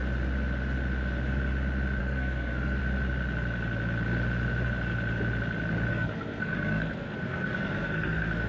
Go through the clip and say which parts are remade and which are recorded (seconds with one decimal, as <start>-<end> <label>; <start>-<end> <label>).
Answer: 0.0-2.0 recorded; 2.0-2.8 remade; 2.8-5.9 recorded; 5.9-8.5 remade